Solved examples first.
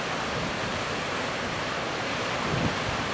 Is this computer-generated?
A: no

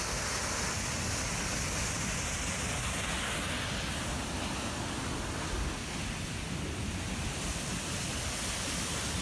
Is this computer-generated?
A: no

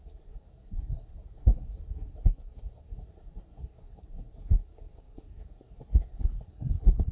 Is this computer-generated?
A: yes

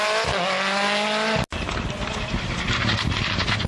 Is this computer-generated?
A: no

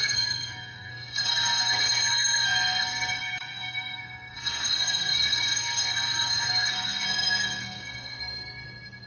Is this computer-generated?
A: yes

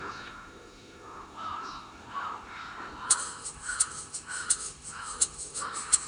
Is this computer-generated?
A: yes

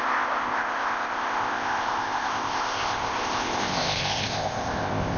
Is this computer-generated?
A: yes